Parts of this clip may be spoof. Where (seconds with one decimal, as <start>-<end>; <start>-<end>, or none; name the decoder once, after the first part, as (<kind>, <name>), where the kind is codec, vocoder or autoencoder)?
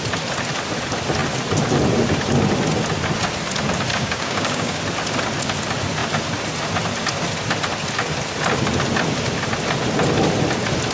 3.9-4.8 (codec, DAC)